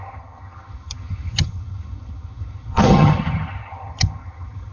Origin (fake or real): fake